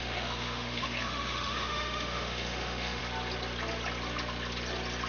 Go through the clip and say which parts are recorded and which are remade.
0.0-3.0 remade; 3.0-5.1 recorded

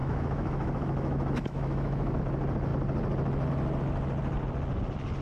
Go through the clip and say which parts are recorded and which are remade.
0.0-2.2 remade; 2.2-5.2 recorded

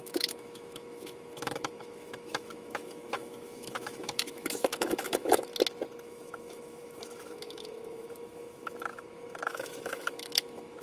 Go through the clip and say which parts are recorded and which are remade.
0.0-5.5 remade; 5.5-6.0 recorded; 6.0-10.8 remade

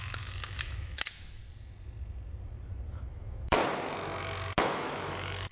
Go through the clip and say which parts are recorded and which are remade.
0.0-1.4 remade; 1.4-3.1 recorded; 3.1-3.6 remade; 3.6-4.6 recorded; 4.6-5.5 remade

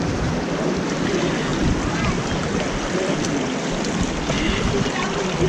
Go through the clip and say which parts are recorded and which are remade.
0.0-5.5 recorded

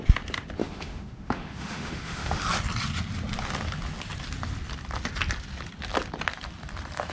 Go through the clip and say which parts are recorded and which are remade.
0.0-0.6 recorded; 0.6-2.4 remade; 2.4-7.1 recorded